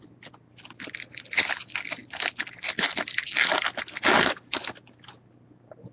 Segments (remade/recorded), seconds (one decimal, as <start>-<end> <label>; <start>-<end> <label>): 0.0-5.9 recorded

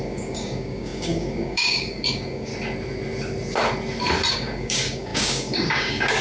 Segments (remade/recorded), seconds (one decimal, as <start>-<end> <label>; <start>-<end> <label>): 0.0-2.5 remade; 2.5-4.3 recorded; 4.3-6.2 remade